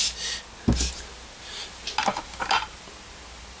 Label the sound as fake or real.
real